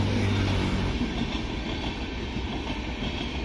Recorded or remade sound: recorded